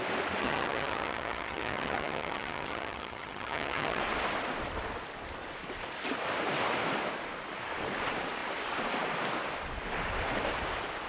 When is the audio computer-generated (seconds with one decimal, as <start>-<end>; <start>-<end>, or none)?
0.4-4.0